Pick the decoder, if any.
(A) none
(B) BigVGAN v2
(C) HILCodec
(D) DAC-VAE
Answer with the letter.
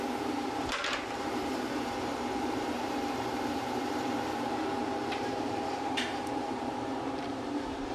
B